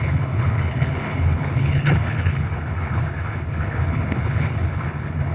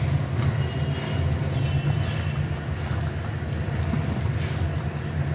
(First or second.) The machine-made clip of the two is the first